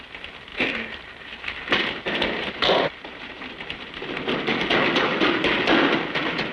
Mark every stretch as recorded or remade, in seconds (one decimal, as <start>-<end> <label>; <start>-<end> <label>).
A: 0.0-0.5 recorded; 0.5-4.4 remade; 4.4-6.5 recorded